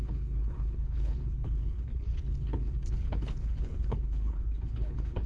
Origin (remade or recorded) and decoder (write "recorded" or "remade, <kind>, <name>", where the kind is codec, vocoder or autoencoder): remade, codec, HILCodec